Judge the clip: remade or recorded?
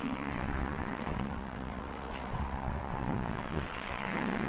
remade